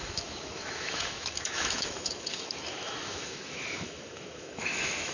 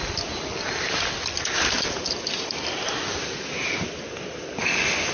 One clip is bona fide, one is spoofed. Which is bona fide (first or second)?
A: second